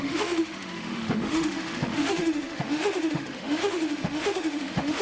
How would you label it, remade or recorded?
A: remade